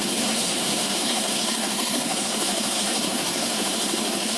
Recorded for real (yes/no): no